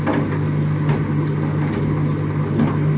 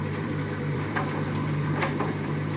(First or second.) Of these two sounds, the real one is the first